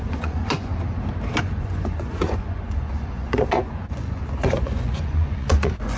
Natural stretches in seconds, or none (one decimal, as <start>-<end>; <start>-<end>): 0.7-1.4